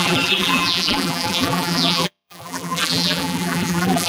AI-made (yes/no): yes